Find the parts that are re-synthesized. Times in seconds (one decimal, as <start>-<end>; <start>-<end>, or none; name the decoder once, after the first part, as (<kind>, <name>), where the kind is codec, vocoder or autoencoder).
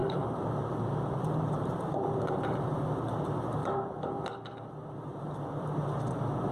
0.0-1.9 (vocoder, BigVGAN v2); 3.6-4.2